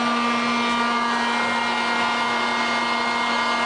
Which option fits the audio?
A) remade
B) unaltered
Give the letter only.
B